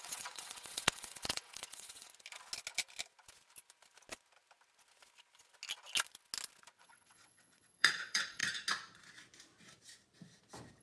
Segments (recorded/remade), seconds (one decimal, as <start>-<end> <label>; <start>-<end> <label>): 0.0-2.1 remade; 2.1-6.8 recorded; 6.8-8.4 remade; 8.4-10.8 recorded